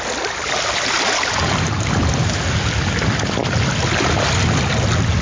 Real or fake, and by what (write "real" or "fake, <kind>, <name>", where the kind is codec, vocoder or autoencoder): real